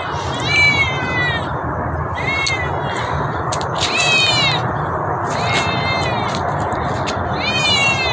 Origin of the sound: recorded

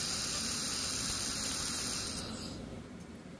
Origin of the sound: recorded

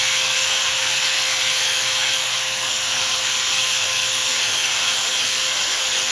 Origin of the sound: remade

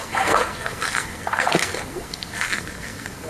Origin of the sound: remade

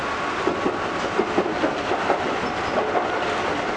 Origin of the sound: recorded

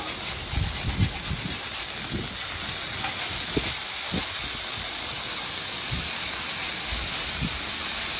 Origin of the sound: recorded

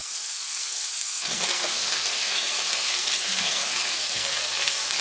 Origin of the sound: remade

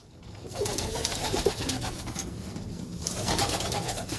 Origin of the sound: remade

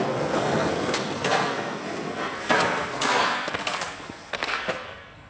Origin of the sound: remade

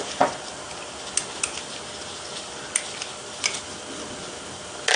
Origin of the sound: recorded